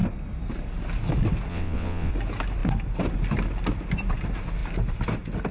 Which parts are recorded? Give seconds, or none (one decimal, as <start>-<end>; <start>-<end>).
0.0-1.5; 2.1-5.5